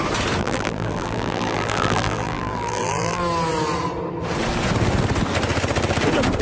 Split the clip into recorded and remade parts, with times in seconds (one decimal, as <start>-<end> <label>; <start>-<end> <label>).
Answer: 0.0-0.4 recorded; 0.4-3.2 remade; 3.2-6.4 recorded

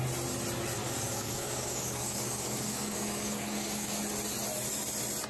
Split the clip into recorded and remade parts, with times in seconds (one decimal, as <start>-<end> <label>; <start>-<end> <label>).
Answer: 0.0-0.8 recorded; 0.8-4.0 remade; 4.0-5.3 recorded

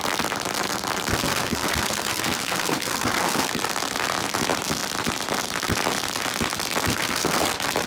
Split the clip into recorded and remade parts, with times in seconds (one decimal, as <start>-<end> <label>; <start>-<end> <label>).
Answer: 0.0-1.1 recorded; 1.1-3.5 remade; 3.5-6.9 recorded; 6.9-7.5 remade; 7.5-7.9 recorded